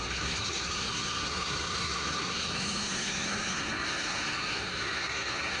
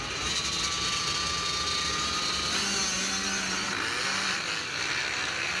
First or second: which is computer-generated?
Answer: first